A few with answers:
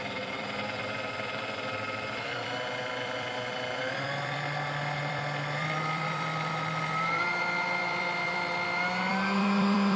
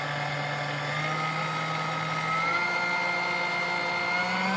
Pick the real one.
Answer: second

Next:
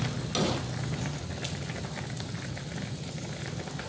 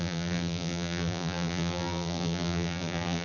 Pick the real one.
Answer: first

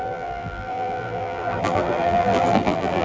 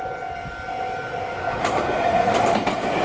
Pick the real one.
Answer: second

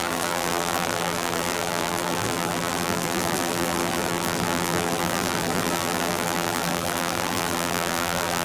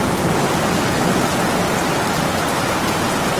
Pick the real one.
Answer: second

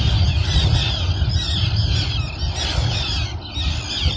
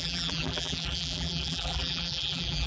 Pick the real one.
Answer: first